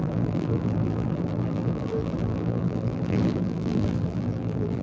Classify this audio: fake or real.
fake